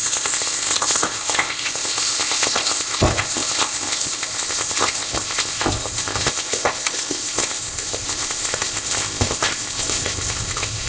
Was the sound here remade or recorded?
remade